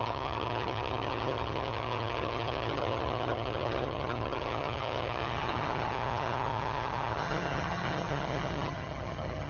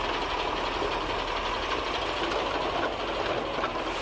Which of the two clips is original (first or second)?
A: second